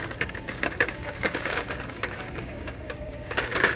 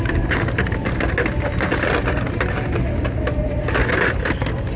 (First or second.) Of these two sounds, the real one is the second